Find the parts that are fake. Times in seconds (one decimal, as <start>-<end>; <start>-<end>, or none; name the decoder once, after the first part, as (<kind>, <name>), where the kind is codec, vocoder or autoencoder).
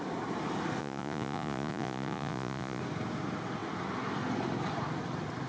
0.8-2.8 (vocoder, Vocos)